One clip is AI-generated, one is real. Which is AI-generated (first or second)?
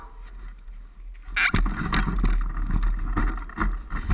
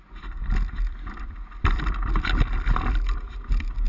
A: second